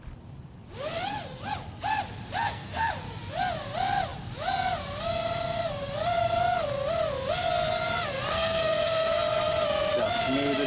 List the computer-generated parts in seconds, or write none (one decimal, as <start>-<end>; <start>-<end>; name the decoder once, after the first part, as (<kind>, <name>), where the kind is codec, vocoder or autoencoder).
2.4-2.9 (codec, SNAC); 8.3-9.1